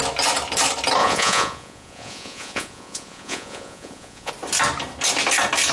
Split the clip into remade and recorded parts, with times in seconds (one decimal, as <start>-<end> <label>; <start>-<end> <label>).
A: 0.0-1.0 recorded; 1.0-4.3 remade; 4.3-5.7 recorded